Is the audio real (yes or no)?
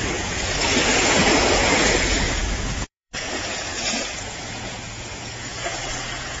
no